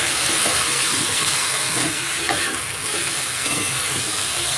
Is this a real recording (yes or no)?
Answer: no